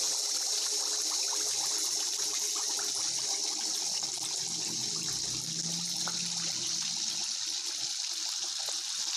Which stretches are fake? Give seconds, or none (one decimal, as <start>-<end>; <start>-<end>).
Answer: none